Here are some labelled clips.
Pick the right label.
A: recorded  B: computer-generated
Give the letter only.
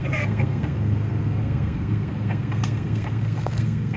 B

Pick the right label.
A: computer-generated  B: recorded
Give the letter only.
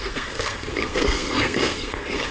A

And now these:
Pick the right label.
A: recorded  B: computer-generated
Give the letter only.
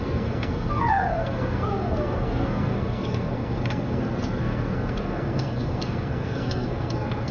B